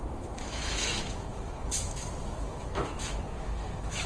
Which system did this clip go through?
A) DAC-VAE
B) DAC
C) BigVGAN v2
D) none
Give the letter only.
A